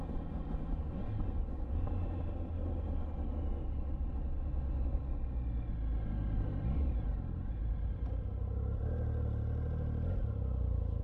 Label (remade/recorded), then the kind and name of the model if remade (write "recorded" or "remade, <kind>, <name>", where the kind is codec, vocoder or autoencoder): recorded